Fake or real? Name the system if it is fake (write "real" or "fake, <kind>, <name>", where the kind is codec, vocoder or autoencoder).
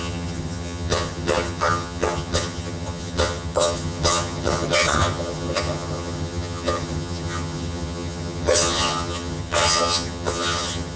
fake, vocoder, HiFi-GAN